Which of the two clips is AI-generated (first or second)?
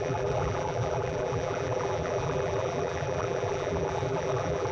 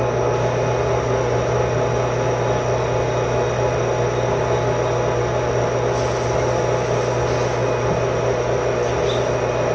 first